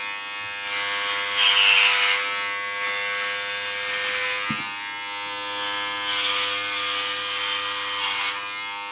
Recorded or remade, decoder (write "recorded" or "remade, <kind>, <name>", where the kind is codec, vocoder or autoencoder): recorded